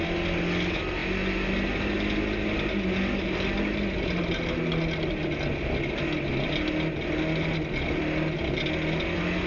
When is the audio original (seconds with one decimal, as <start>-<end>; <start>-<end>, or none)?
0.0-9.5